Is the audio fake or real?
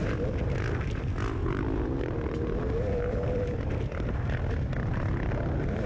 real